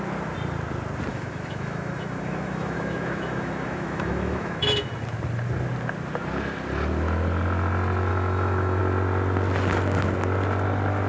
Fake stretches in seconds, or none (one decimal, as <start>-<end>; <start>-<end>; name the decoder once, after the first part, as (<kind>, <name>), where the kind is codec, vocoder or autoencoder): 1.1-4.9 (autoencoder, DAC-VAE); 8.1-8.8